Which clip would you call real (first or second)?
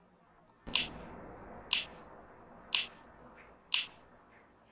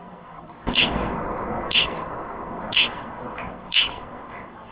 first